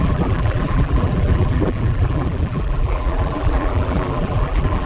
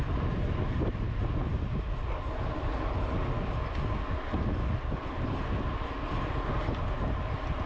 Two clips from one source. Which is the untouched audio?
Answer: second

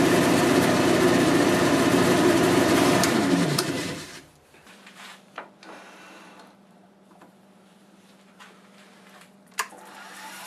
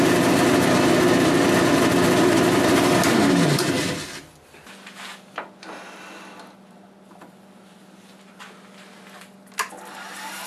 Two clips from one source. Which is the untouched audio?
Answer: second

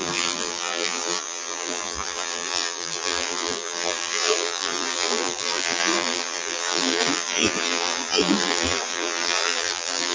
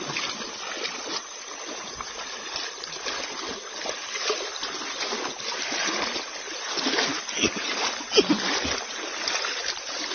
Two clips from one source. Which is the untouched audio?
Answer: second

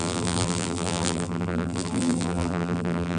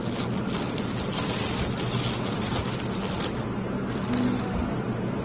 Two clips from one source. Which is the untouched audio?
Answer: second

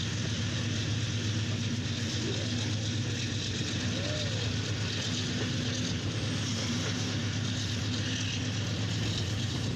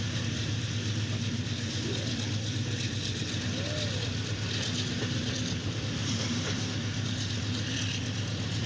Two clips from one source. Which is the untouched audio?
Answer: first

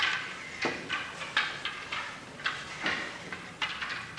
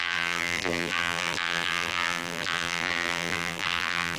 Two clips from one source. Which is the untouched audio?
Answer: first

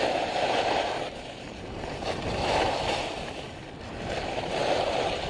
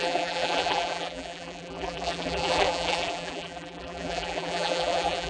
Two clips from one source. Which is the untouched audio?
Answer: first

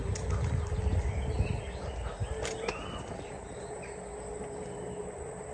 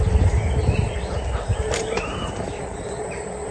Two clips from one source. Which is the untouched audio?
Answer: first